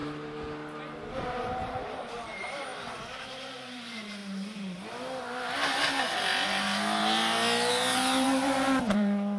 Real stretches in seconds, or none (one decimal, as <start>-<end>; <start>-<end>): 0.0-1.1; 2.7-3.4; 4.2-7.7